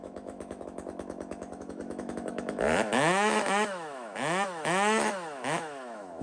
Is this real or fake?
fake